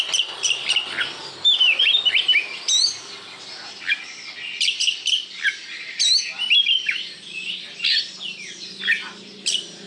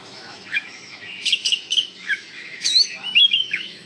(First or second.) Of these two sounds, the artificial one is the second